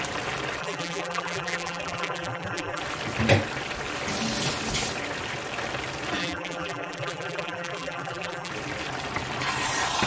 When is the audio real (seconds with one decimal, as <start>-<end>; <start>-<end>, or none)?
0.0-0.6; 2.8-6.2; 8.5-10.1